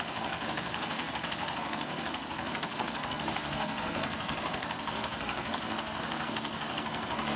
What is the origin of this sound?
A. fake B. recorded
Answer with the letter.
A